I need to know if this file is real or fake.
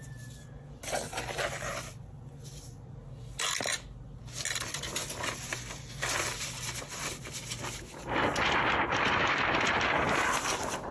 real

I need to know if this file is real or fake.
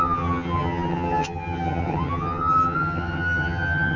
fake